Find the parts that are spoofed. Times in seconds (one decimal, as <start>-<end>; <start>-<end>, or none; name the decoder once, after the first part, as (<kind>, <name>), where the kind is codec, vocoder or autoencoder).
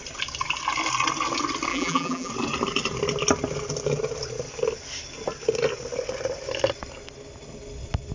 1.7-2.3 (vocoder, BigVGAN v2)